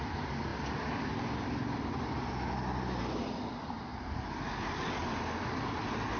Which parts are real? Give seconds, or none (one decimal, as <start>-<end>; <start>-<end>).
0.0-6.2